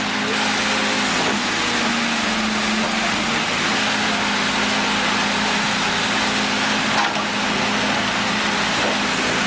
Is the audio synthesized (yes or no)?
no